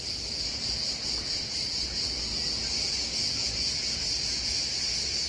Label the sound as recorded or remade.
recorded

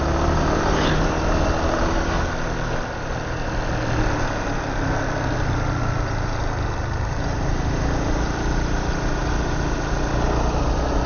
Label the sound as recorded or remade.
recorded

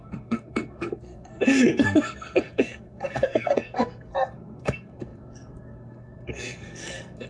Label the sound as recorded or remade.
remade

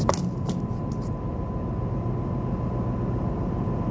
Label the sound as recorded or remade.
recorded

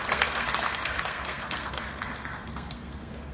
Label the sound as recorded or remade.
remade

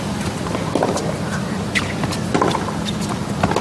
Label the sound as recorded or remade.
recorded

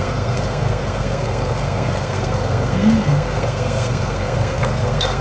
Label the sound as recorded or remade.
remade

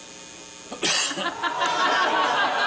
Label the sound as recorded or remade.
recorded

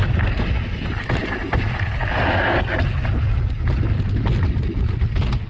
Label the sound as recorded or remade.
recorded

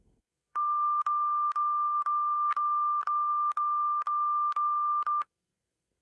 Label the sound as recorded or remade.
remade